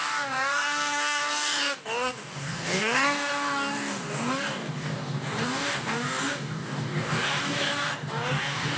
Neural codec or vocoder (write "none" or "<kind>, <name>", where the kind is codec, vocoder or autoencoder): codec, DAC